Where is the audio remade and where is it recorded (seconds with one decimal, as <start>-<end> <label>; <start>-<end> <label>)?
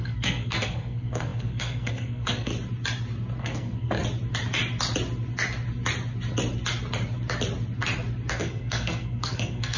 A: 0.0-2.5 remade; 2.5-3.4 recorded; 3.4-4.0 remade; 4.0-8.3 recorded; 8.3-9.8 remade